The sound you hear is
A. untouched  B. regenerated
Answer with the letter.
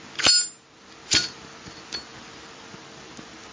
A